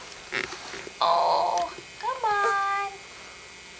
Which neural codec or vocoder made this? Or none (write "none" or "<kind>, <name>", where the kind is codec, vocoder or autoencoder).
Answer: none